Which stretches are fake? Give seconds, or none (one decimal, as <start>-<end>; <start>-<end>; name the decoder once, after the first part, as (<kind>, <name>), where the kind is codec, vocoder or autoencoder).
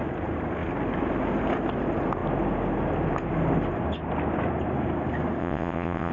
5.4-6.1 (vocoder, WaveNeXt)